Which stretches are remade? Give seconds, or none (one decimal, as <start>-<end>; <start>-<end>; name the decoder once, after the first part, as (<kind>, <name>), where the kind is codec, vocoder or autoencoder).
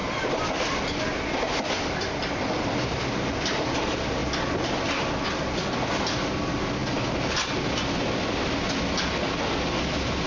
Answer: none